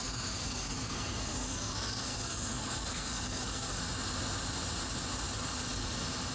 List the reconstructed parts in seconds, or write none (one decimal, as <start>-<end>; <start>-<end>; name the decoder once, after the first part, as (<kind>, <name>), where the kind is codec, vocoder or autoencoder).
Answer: 0.0-3.8 (codec, SNAC)